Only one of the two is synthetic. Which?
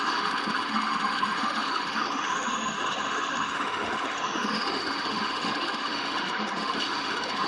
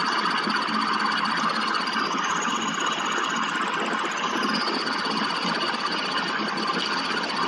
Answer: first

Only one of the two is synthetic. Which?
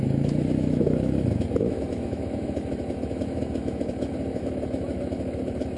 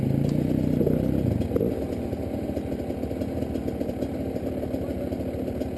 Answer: first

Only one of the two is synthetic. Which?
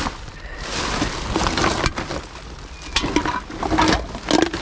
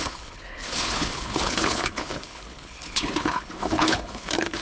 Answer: second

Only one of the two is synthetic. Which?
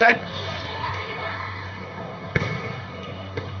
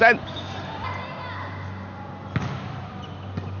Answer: first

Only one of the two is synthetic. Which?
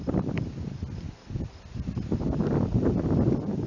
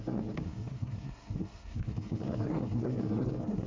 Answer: second